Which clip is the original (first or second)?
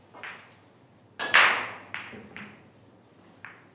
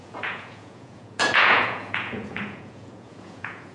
first